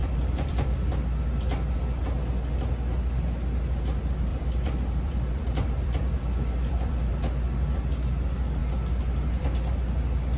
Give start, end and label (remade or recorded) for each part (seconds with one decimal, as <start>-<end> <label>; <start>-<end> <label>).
0.0-0.9 remade; 0.9-4.3 recorded; 4.3-7.1 remade; 7.1-10.4 recorded